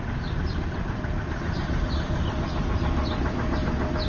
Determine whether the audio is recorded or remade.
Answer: recorded